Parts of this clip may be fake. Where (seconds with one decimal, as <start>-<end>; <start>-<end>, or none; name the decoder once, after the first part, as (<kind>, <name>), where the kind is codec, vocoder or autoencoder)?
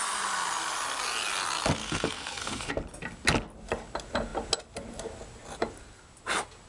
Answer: 1.8-2.7 (codec, SNAC)